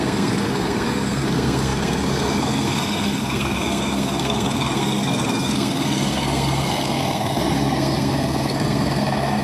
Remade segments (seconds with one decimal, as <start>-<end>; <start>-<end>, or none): 0.0-9.4